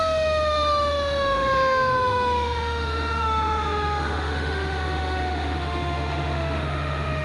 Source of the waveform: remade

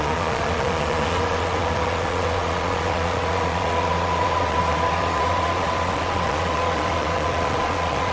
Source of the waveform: remade